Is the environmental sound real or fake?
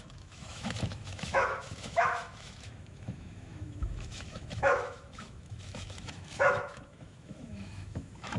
fake